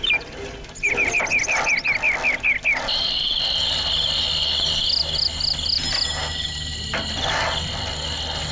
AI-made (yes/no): no